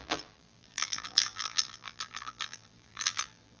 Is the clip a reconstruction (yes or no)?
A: yes